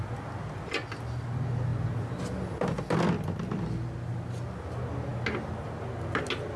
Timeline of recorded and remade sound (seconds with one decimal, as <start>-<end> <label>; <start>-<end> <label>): 0.0-6.6 recorded